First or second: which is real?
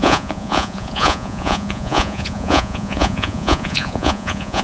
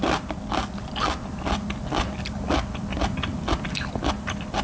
second